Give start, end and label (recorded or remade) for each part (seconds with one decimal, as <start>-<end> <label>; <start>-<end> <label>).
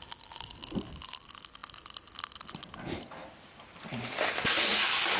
0.0-5.2 recorded